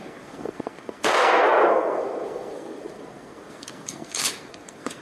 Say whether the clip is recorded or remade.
remade